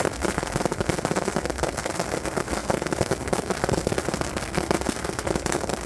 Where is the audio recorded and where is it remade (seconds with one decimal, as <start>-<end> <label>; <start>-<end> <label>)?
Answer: 0.0-5.9 remade

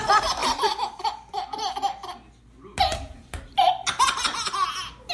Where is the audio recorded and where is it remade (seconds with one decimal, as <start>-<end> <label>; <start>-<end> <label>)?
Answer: 0.0-5.1 recorded

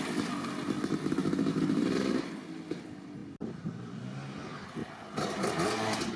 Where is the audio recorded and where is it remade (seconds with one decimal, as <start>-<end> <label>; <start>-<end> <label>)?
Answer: 0.0-6.2 recorded

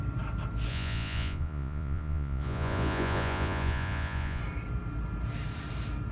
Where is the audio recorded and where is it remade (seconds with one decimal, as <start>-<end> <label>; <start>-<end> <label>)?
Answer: 0.0-0.7 recorded; 0.7-4.4 remade; 4.4-6.1 recorded

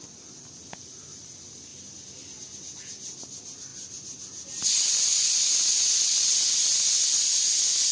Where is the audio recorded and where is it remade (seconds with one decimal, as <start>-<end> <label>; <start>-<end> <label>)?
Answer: 0.0-7.9 recorded

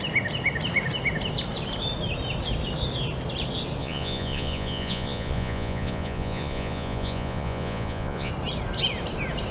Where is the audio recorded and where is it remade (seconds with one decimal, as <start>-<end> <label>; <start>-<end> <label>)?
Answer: 0.0-3.8 recorded; 3.8-8.3 remade; 8.3-9.5 recorded